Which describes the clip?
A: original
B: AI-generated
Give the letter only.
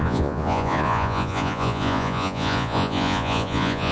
B